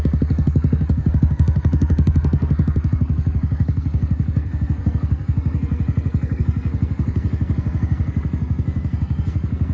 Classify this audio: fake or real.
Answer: fake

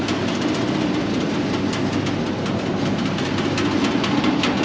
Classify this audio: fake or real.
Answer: real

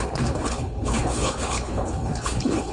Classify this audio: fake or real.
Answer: fake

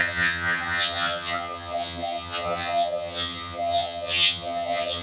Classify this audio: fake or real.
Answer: fake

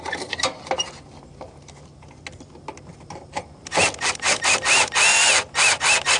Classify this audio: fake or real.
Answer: real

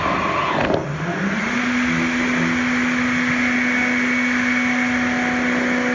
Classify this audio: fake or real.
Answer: real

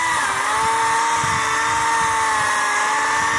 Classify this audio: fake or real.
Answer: real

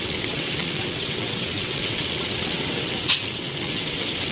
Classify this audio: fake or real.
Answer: fake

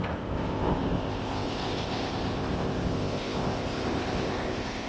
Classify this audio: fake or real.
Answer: fake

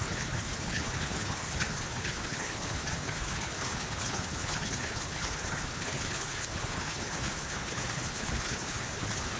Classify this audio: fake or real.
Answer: fake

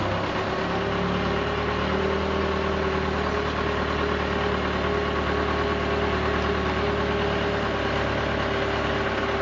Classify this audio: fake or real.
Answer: real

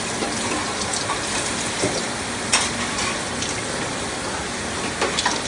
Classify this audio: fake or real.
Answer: real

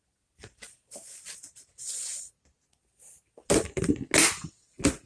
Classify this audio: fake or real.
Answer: real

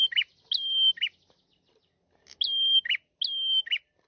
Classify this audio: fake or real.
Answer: real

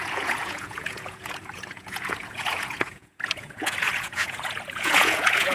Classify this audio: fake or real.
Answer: fake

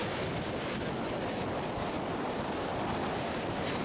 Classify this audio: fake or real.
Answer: real